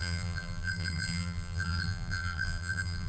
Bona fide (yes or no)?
no